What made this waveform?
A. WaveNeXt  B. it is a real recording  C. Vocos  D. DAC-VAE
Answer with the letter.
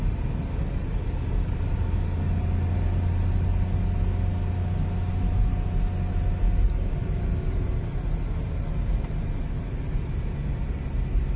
B